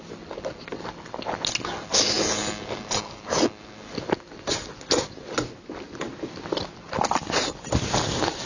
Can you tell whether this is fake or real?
real